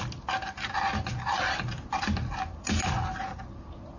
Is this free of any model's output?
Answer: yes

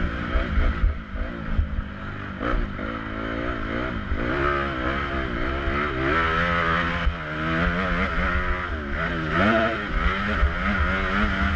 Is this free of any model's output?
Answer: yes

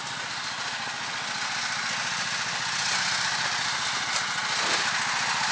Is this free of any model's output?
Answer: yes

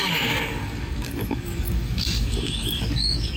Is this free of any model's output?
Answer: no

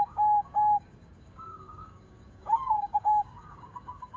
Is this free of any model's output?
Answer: no